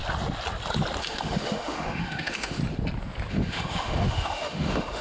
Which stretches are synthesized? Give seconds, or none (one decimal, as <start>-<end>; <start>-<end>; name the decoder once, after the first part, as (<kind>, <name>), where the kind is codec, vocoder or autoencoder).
1.0-2.6 (autoencoder, DAC-VAE); 3.3-5.0